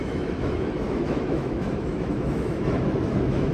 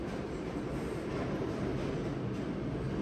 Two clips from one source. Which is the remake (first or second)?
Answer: first